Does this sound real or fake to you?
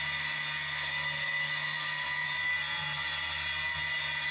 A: real